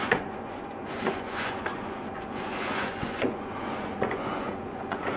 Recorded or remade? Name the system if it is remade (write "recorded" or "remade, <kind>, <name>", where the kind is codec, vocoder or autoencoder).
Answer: remade, vocoder, Vocos